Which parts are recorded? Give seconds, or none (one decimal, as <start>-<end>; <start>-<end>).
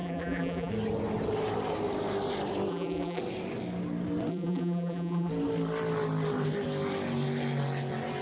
0.7-2.7; 3.2-4.3; 5.3-8.2